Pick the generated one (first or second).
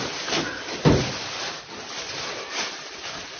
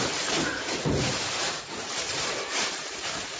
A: second